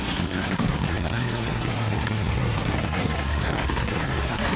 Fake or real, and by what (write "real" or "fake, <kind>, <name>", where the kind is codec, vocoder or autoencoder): fake, codec, SNAC